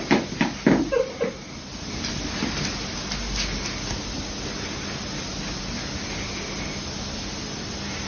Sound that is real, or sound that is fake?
real